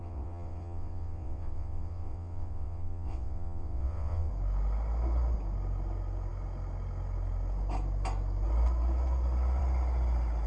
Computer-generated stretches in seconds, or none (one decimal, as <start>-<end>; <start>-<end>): 0.0-4.3